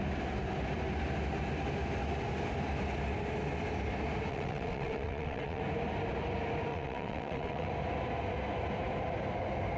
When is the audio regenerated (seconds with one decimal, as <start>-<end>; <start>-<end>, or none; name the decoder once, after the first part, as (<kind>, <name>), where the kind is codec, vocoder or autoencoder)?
4.3-5.6 (vocoder, WaveNeXt); 6.7-7.7